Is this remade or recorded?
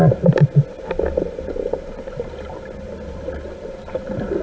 recorded